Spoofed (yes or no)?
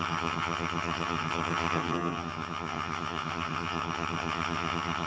yes